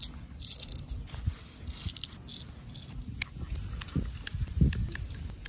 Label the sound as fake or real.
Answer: real